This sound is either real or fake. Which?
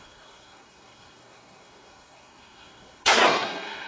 fake